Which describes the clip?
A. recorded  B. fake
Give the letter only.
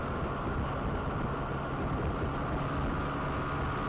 A